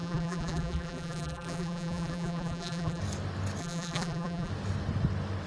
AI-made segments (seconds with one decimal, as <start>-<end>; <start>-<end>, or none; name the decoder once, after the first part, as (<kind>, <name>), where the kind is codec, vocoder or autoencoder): 0.0-3.0 (vocoder, BigVGAN v2); 3.6-4.5